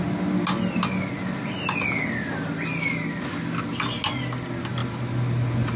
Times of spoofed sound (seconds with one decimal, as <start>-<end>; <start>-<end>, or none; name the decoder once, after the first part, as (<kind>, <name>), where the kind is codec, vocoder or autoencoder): none